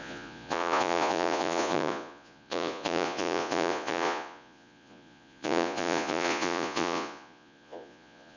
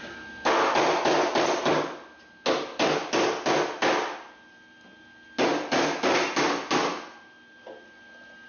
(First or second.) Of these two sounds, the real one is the second